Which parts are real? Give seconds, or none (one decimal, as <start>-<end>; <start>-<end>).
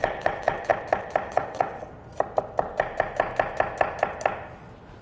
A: 0.7-1.3; 1.9-5.0